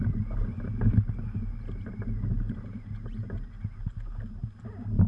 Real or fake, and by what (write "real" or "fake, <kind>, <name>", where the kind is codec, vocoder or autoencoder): real